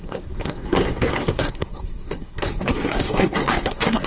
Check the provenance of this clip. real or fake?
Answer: fake